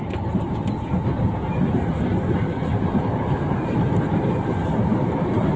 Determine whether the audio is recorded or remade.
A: recorded